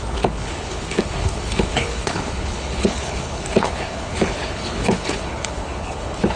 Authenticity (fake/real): fake